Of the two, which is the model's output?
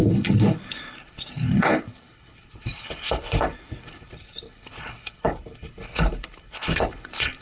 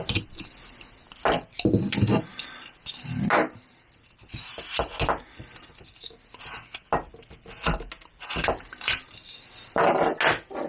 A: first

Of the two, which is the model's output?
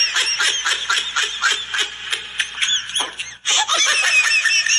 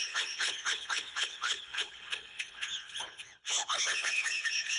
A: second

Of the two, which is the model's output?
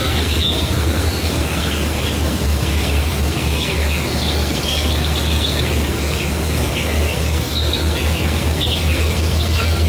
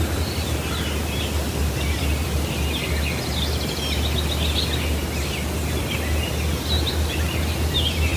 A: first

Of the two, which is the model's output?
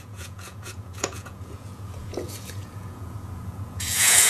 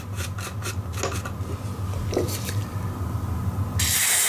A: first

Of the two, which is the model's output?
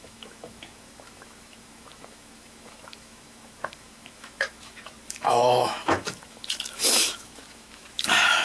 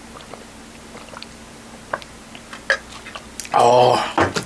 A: first